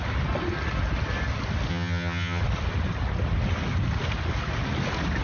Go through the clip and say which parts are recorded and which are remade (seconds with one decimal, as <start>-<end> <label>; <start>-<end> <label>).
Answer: 0.0-1.7 recorded; 1.7-2.4 remade; 2.4-5.2 recorded